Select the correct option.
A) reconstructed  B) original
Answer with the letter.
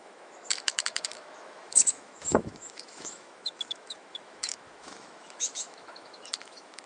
A